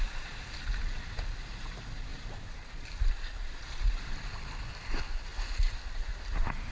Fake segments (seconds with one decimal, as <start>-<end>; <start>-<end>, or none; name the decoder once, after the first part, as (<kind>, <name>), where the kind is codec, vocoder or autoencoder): 2.1-4.2 (vocoder, BigVGAN v2)